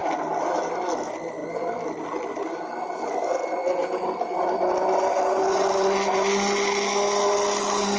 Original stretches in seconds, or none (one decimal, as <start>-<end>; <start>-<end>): 0.0-8.0